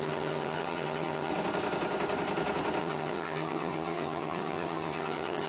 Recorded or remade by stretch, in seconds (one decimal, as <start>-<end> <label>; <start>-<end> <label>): 0.0-1.3 remade; 1.3-2.8 recorded; 2.8-5.5 remade